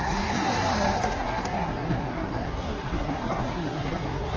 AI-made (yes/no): yes